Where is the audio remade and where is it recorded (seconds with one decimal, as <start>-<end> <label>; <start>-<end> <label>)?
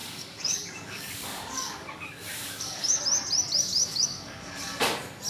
0.0-3.0 remade; 3.0-3.8 recorded; 3.8-4.8 remade; 4.8-5.3 recorded